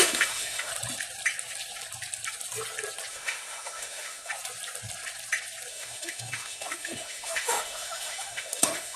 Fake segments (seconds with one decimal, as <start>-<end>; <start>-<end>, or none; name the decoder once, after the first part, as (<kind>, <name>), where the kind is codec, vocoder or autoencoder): 0.0-0.7 (autoencoder, DAC-VAE); 3.1-4.3; 5.7-9.0

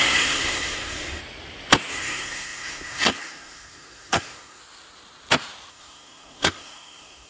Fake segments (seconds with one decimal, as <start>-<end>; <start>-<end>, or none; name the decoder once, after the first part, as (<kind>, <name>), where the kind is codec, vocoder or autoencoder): 0.0-1.2 (codec, SNAC); 1.9-4.6; 5.7-7.3